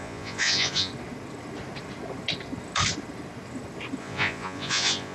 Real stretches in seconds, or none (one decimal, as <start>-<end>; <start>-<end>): 0.9-4.0